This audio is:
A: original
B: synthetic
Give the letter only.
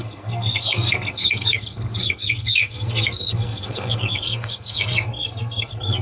B